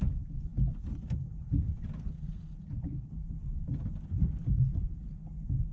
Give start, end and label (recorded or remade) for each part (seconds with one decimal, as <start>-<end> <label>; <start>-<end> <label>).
0.0-5.7 recorded